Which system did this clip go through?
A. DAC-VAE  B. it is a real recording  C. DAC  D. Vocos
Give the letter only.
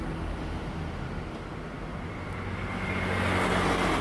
B